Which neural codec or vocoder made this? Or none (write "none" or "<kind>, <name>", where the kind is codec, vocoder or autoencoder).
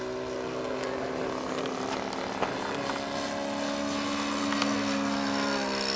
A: none